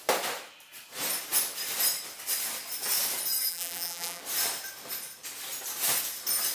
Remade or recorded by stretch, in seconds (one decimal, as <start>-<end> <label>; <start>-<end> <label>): 0.0-3.5 recorded; 3.5-4.2 remade; 4.2-6.5 recorded